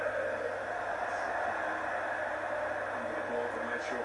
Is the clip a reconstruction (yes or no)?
no